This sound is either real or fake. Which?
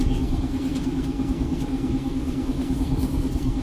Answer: fake